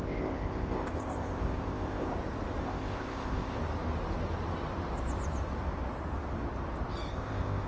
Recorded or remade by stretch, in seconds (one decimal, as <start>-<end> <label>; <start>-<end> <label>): 0.0-2.1 remade; 2.1-2.6 recorded; 2.6-3.6 remade; 3.6-7.1 recorded; 7.1-7.7 remade